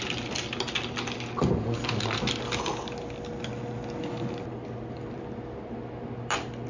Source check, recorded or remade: recorded